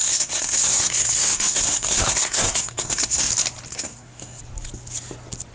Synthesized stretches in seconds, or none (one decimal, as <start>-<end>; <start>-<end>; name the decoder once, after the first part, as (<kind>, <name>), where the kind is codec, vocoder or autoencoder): 0.0-3.3 (codec, SNAC); 3.7-4.4